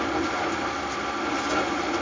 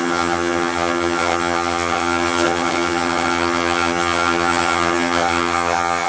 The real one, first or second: first